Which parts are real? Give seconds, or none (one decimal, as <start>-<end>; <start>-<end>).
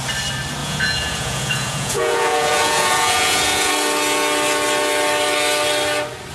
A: 0.0-0.6; 3.7-6.3